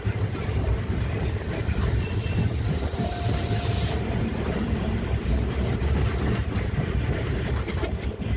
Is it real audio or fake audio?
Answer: fake